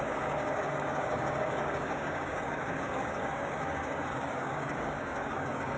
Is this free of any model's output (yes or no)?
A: no